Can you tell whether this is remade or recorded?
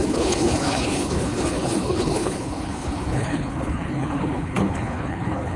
remade